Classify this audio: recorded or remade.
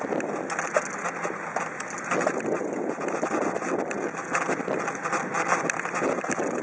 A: recorded